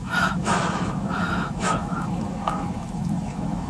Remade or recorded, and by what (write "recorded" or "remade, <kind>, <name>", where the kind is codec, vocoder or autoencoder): remade, autoencoder, DAC-VAE